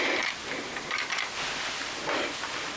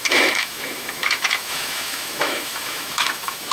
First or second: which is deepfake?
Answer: second